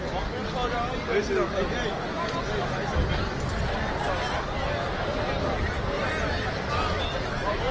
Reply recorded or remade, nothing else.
recorded